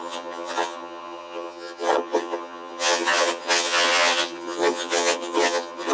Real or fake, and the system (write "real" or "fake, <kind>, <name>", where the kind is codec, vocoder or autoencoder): fake, vocoder, HiFi-GAN